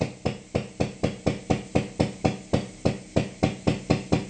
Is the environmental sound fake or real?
real